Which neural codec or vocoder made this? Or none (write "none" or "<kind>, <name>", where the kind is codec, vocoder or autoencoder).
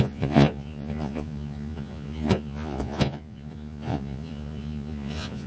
vocoder, Vocos